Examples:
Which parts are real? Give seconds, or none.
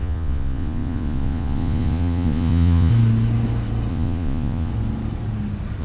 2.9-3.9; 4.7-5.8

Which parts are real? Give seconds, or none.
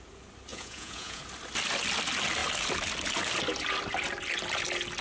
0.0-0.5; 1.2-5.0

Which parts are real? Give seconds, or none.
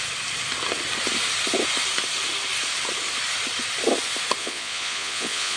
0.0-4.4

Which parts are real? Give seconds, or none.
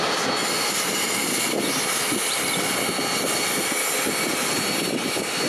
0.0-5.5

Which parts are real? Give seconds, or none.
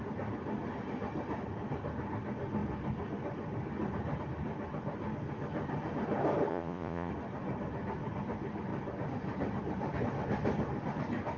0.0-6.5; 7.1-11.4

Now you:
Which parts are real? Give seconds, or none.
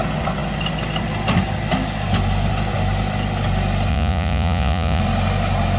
0.0-3.9; 5.0-5.8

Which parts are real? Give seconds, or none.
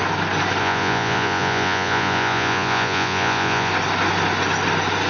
0.0-0.6; 3.7-5.1